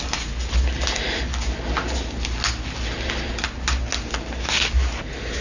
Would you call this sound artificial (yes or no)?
no